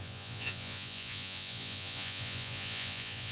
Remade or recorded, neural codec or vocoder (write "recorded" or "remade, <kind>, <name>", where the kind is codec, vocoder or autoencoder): remade, vocoder, Vocos